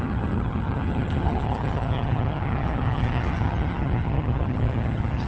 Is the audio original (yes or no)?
no